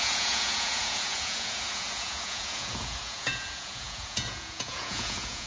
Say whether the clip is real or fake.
fake